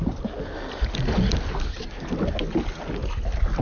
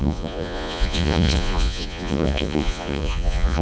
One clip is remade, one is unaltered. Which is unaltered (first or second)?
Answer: first